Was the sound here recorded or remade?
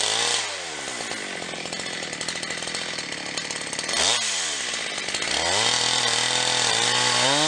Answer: recorded